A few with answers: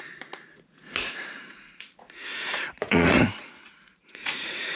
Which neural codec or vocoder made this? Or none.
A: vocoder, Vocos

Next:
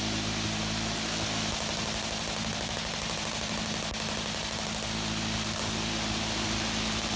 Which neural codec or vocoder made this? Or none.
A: none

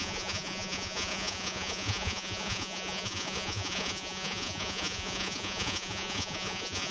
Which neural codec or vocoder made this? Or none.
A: vocoder, Vocos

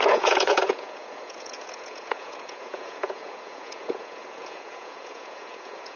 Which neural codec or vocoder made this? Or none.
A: vocoder, Vocos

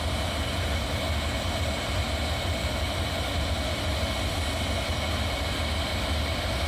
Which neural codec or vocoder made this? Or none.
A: none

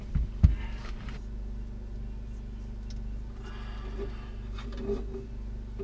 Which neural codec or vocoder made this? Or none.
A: none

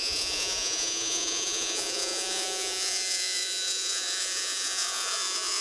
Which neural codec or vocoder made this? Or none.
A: vocoder, Vocos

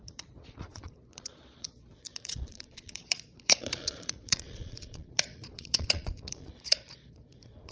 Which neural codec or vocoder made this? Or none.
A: vocoder, Vocos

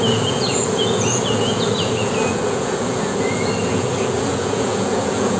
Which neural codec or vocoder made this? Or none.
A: vocoder, Vocos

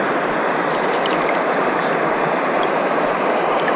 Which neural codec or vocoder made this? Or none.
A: none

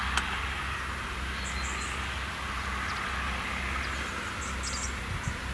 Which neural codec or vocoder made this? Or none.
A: none